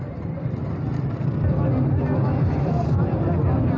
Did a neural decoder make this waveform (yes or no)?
no